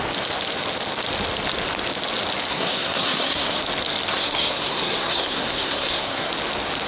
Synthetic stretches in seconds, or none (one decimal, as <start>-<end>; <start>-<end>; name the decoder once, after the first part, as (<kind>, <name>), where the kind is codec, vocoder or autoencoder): 2.5-3.6 (codec, SNAC); 4.1-6.3